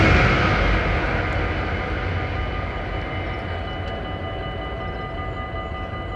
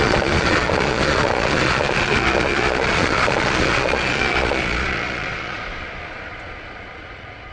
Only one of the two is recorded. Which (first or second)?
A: first